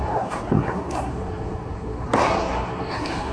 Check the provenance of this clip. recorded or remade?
remade